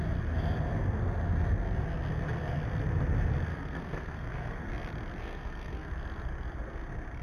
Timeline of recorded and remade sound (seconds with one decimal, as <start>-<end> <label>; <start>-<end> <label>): 0.0-3.5 recorded; 3.5-4.7 remade; 4.7-5.2 recorded; 5.2-5.9 remade; 5.9-7.2 recorded